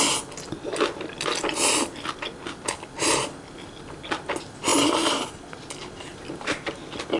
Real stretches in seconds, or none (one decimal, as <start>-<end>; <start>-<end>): 0.0-7.2